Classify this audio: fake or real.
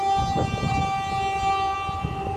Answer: real